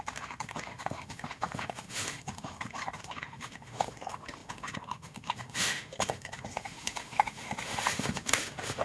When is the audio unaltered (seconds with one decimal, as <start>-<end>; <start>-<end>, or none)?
none